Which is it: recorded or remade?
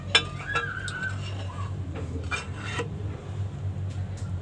recorded